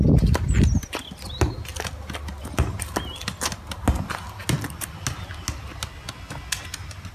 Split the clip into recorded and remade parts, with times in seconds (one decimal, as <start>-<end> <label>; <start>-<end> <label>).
0.0-7.1 recorded

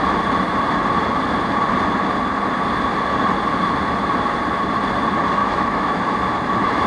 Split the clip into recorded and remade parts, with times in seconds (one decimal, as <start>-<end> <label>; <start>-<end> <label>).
0.0-5.4 recorded; 5.4-6.1 remade; 6.1-6.9 recorded

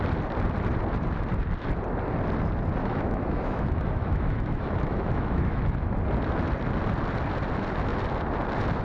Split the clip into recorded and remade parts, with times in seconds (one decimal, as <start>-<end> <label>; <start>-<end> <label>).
0.0-2.8 recorded; 2.8-5.9 remade; 5.9-8.8 recorded

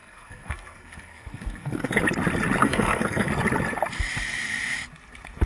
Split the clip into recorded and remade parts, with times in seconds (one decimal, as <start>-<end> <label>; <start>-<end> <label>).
0.0-2.0 remade; 2.0-2.6 recorded; 2.6-3.3 remade; 3.3-5.5 recorded

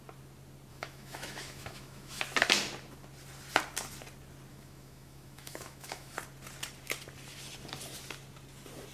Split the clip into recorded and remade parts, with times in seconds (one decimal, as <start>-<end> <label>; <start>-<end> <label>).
0.0-0.7 recorded; 0.7-2.2 remade; 2.2-4.5 recorded; 4.5-6.1 remade; 6.1-8.9 recorded

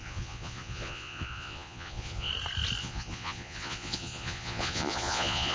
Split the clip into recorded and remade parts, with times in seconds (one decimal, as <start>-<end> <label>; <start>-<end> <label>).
0.0-2.3 remade; 2.3-2.8 recorded; 2.8-5.5 remade

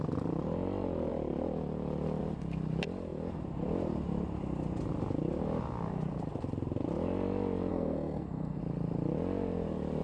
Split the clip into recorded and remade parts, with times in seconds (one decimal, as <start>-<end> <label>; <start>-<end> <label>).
0.0-7.7 recorded; 7.7-8.6 remade; 8.6-10.0 recorded

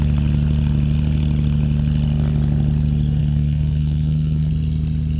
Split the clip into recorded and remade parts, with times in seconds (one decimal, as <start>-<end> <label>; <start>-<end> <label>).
0.0-3.2 recorded; 3.2-4.5 remade; 4.5-5.2 recorded